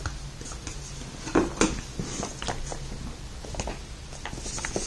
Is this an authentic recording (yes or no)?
yes